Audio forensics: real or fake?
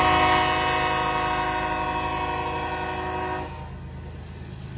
real